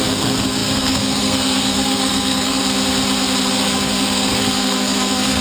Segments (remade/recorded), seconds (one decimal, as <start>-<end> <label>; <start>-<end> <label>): 0.0-2.6 remade; 2.6-3.5 recorded; 3.5-5.4 remade